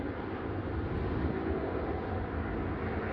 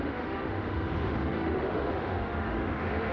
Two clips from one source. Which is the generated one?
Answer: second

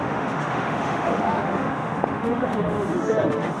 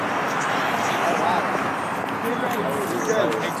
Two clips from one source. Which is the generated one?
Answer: first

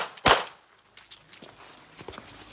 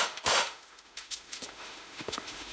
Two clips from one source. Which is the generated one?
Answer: second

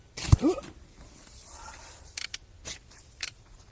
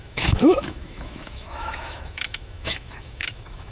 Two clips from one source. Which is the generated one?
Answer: second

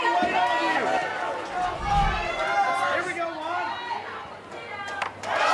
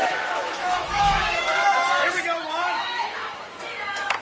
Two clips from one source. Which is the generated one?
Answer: second